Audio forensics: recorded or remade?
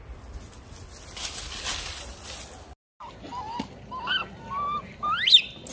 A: recorded